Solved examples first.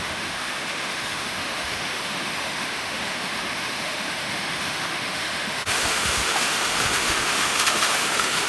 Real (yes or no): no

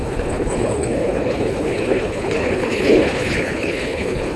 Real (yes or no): no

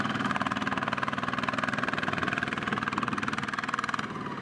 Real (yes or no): no